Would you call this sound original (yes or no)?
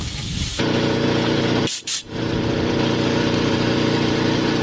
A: no